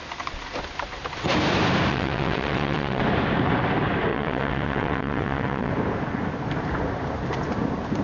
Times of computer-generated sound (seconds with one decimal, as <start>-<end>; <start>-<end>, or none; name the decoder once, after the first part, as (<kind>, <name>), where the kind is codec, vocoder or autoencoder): 1.9-3.0 (vocoder, WaveNeXt); 4.1-5.7